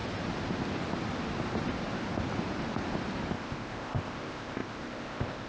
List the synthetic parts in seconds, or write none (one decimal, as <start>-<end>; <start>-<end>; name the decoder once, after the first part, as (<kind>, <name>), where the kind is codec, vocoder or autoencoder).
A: 3.3-5.5 (codec, ZipCodec)